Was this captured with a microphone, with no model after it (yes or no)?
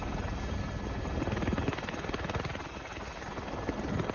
yes